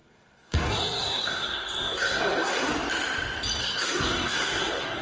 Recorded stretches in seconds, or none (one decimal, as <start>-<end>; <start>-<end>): 2.7-3.6